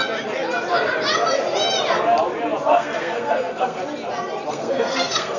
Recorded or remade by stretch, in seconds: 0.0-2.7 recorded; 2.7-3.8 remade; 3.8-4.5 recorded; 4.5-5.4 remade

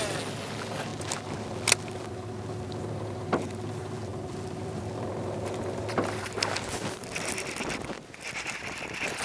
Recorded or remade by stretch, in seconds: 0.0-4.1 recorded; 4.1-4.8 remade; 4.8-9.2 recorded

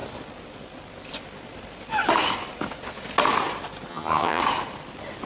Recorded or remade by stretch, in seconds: 0.0-3.9 recorded; 3.9-4.4 remade; 4.4-5.3 recorded

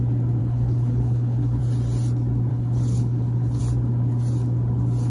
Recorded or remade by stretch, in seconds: 0.0-0.4 recorded; 0.4-1.6 remade; 1.6-2.5 recorded; 2.5-3.6 remade; 3.6-5.1 recorded

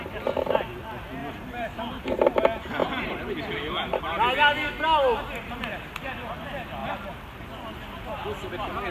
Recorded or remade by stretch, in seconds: 0.0-1.2 recorded; 1.2-2.0 remade; 2.0-8.9 recorded